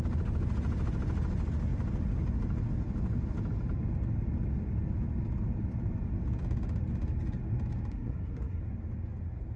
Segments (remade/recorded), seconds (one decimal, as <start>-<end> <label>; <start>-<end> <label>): 0.0-7.9 recorded; 7.9-8.6 remade; 8.6-9.6 recorded